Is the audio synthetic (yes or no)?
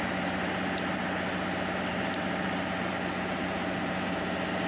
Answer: no